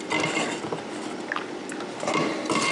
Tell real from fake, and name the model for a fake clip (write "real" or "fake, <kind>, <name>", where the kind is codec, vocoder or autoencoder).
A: real